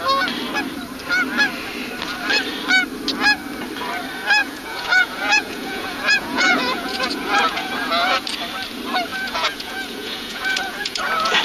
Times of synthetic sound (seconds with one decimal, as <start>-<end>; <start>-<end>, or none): 4.4-7.9; 9.1-11.4

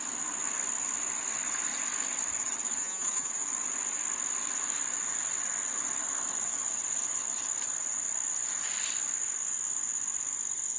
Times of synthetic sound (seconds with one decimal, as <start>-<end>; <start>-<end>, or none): 2.8-3.3